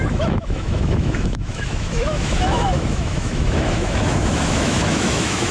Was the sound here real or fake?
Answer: fake